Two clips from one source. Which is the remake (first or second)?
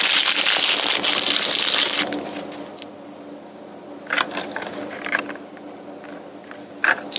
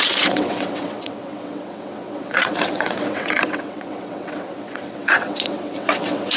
second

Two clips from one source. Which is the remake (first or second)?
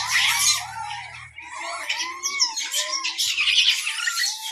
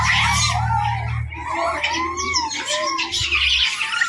first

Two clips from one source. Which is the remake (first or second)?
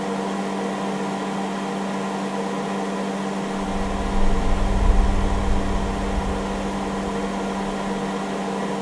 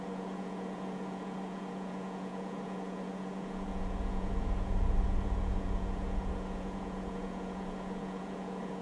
second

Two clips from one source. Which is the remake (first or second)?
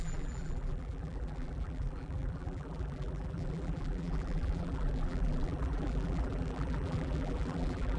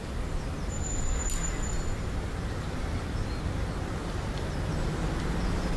first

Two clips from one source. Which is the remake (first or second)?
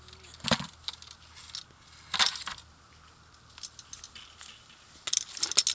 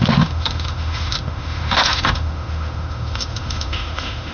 second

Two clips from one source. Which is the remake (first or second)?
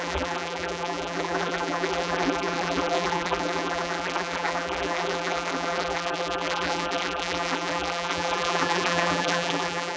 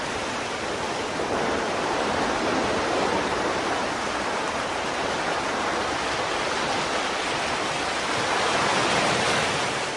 first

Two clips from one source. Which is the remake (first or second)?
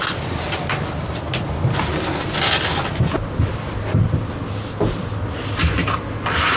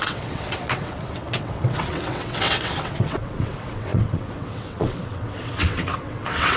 second